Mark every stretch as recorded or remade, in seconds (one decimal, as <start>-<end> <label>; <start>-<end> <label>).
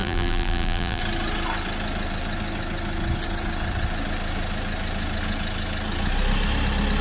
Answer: 0.0-1.0 remade; 1.0-7.0 recorded